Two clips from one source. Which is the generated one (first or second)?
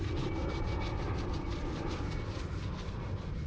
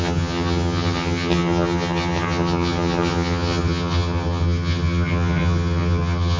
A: second